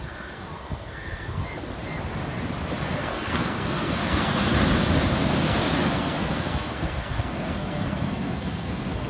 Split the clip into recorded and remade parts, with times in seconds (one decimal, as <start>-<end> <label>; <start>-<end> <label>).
0.0-1.4 remade; 1.4-2.8 recorded; 2.8-4.5 remade; 4.5-5.4 recorded; 5.4-9.1 remade